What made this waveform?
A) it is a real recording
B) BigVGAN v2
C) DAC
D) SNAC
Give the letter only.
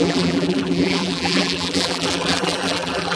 B